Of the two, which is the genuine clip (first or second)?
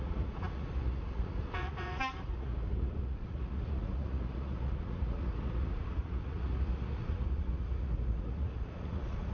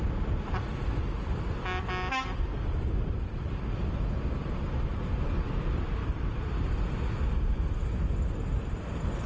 second